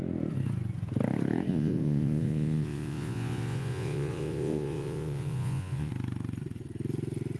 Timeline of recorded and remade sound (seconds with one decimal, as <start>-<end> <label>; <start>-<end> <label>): 0.0-1.5 recorded; 1.5-5.9 remade; 5.9-7.4 recorded